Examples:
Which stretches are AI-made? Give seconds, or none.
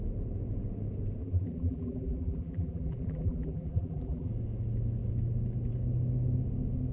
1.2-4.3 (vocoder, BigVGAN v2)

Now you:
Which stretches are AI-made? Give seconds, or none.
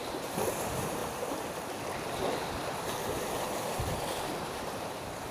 0.0-1.0 (vocoder, BigVGAN v2); 4.2-5.3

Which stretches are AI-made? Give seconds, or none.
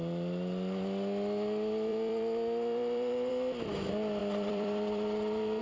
1.9-3.3 (vocoder, BigVGAN v2); 4.2-5.6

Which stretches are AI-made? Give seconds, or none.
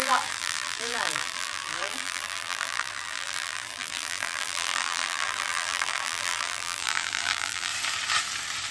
0.0-7.7 (vocoder, BigVGAN v2)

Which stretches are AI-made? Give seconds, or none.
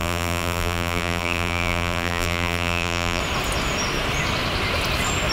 0.0-3.2 (vocoder, BigVGAN v2)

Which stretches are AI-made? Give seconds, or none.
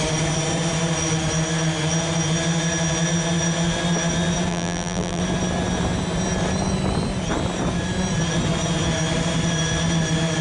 4.5-5.2 (vocoder, BigVGAN v2)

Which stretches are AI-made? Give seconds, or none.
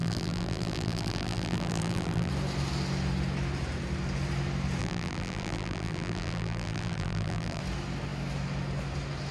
0.0-2.3 (vocoder, BigVGAN v2); 4.8-7.6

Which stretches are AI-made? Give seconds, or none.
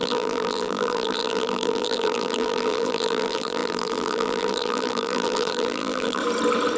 0.0-6.2 (vocoder, BigVGAN v2)